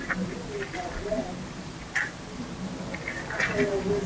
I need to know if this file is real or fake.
real